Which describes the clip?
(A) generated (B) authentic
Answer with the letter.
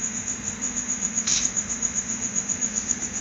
A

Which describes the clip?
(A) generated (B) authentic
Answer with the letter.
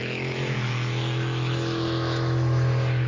A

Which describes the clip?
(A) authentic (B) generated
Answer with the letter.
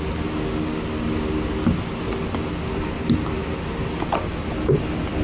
A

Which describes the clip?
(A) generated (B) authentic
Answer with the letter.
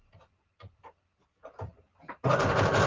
B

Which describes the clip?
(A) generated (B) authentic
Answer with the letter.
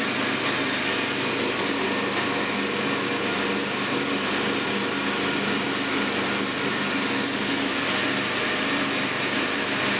B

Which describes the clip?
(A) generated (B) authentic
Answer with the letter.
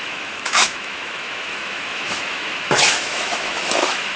A